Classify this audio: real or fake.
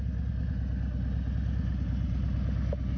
real